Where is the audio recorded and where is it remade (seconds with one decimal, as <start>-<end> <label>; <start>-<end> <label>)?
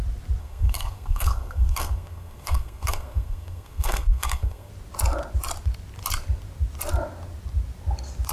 0.0-0.4 recorded; 0.4-4.7 remade; 4.7-8.3 recorded